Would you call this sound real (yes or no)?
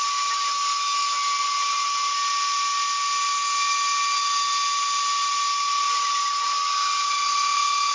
yes